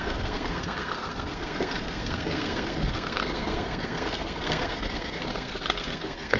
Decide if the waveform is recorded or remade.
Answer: remade